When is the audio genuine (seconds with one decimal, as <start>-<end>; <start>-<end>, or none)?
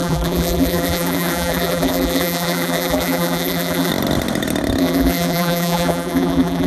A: 3.9-4.8